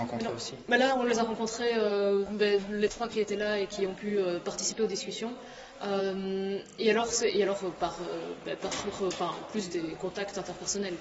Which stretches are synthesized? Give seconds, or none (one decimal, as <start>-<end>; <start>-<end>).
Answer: 1.9-3.3